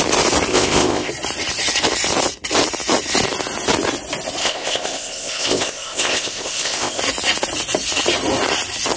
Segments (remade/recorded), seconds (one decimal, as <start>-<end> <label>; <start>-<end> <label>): 0.0-0.5 recorded; 0.5-1.1 remade; 1.1-4.4 recorded; 4.4-7.0 remade; 7.0-9.0 recorded